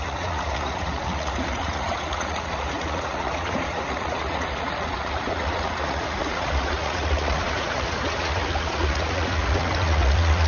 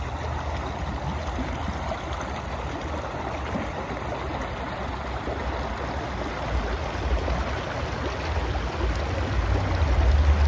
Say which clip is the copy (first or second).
first